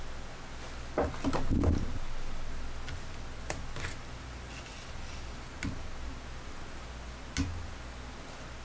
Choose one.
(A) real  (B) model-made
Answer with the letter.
A